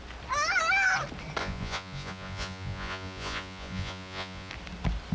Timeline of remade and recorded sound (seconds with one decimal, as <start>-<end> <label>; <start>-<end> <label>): 0.0-1.4 recorded; 1.4-4.5 remade; 4.5-5.1 recorded